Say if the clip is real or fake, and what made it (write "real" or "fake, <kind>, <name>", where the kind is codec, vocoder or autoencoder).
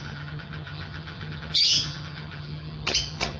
fake, vocoder, HiFi-GAN